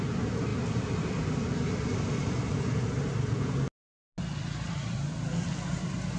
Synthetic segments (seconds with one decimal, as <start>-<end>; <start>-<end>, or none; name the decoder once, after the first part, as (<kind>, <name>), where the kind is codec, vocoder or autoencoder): 0.5-1.3 (vocoder, BigVGAN v2)